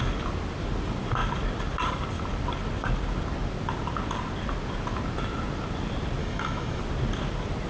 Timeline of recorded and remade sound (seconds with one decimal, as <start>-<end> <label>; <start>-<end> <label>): 0.0-6.2 recorded; 6.2-6.8 remade; 6.8-7.7 recorded